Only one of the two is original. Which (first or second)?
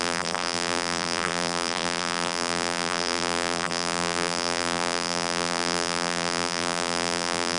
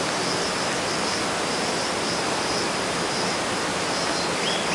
second